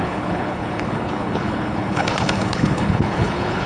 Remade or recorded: remade